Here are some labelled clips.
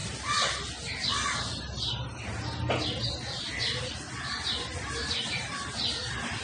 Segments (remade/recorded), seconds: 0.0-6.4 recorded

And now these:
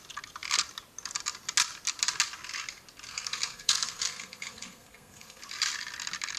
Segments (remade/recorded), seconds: 0.0-3.1 recorded; 3.1-5.4 remade; 5.4-6.4 recorded

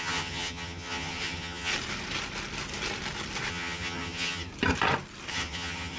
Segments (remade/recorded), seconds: 0.0-1.7 remade; 1.7-3.5 recorded; 3.5-4.5 remade; 4.5-5.3 recorded; 5.3-6.0 remade

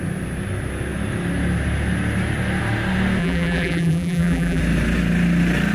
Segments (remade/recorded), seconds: 0.0-3.2 recorded; 3.2-4.6 remade; 4.6-5.7 recorded

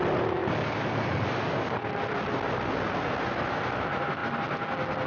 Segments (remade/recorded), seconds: 0.0-5.1 recorded

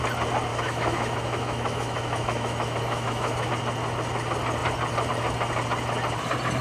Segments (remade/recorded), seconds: 0.0-0.5 recorded; 0.5-3.5 remade; 3.5-6.6 recorded